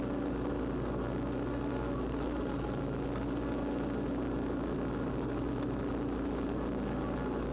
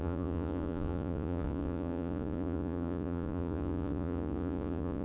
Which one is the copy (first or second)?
second